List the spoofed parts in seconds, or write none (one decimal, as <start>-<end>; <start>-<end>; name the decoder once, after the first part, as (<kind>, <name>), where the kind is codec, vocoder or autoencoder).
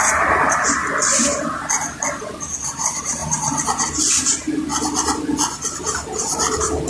none